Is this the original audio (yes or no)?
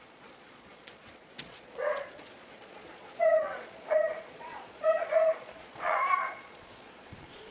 no